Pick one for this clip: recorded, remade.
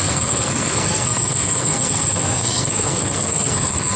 remade